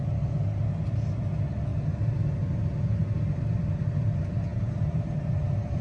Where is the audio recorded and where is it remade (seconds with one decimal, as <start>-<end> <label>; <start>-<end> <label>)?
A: 0.0-4.5 recorded; 4.5-5.8 remade